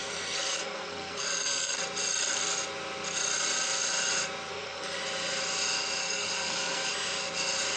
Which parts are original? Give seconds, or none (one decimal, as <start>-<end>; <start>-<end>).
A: 1.8-4.5; 5.0-6.0; 6.9-7.8